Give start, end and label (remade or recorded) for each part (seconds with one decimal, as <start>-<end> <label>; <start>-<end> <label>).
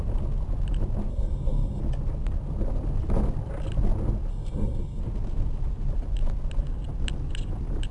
0.0-1.1 recorded; 1.1-1.8 remade; 1.8-4.3 recorded; 4.3-5.0 remade; 5.0-7.9 recorded